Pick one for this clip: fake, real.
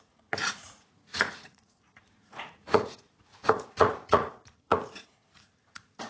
fake